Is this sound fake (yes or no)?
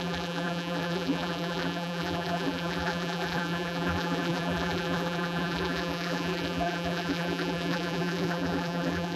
yes